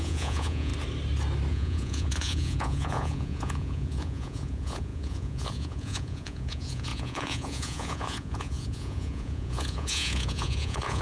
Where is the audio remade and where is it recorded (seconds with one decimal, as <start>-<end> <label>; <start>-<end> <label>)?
0.0-0.7 remade; 0.7-1.5 recorded; 1.5-11.0 remade